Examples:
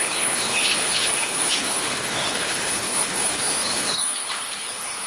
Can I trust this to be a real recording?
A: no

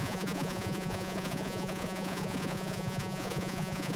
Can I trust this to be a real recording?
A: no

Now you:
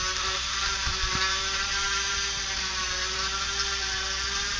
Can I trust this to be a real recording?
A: no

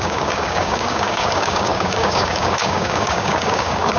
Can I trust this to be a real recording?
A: no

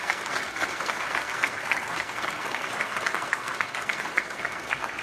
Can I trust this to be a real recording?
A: no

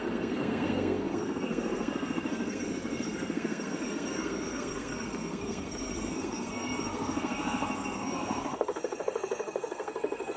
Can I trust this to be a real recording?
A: no